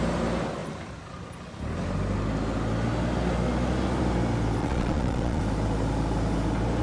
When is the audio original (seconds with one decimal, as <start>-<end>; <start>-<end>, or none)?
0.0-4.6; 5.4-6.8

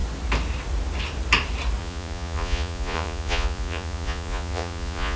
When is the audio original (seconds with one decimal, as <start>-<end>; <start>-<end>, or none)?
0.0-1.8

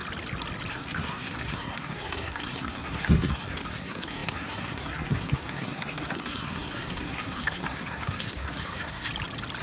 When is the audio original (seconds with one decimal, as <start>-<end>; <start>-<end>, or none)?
0.0-0.7; 9.1-9.6

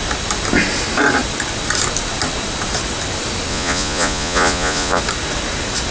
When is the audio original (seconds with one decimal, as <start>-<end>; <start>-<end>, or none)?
0.0-3.5; 5.0-5.9